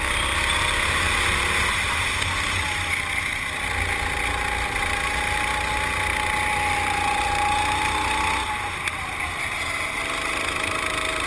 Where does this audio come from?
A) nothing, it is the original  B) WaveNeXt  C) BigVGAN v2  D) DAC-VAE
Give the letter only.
A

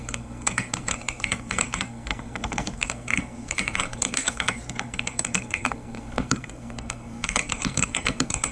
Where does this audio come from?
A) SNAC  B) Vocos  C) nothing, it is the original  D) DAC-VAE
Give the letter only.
A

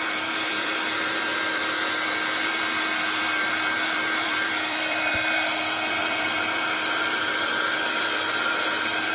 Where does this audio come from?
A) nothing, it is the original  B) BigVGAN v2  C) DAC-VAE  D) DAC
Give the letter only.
B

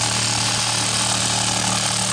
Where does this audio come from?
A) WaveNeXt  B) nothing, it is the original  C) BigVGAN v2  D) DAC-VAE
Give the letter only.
B